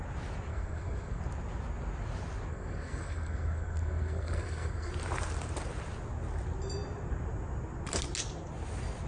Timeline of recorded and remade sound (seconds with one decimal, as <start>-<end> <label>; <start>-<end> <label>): 0.0-0.5 recorded; 0.5-1.2 remade; 1.2-2.5 recorded; 2.5-4.9 remade; 4.9-9.1 recorded